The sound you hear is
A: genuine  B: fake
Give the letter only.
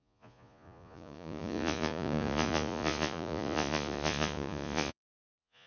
B